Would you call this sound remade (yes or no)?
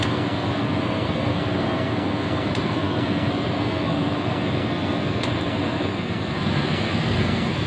yes